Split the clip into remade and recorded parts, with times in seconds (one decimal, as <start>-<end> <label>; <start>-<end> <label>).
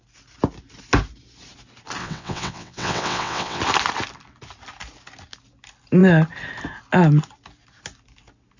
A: 0.0-2.0 recorded; 2.0-3.6 remade; 3.6-8.6 recorded